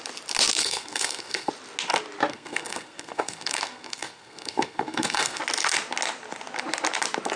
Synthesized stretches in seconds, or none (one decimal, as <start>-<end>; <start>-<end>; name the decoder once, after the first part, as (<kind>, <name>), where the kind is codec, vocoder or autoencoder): 0.6-1.5 (codec, SNAC); 2.3-5.4